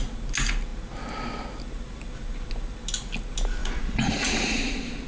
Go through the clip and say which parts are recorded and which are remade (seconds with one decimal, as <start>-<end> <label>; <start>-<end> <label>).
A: 0.0-3.6 recorded; 3.6-4.6 remade; 4.6-5.1 recorded